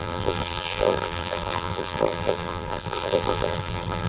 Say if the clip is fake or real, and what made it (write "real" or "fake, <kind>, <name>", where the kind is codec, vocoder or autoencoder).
fake, vocoder, BigVGAN v2